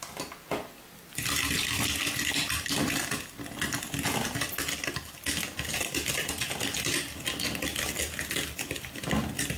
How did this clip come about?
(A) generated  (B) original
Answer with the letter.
B